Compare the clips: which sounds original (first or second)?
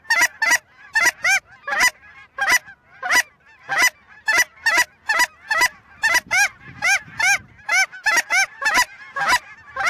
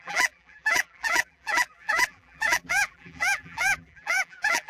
first